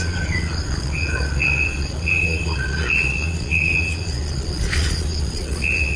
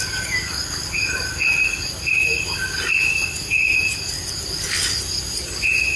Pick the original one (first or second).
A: second